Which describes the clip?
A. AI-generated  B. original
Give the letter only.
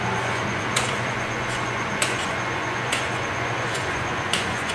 A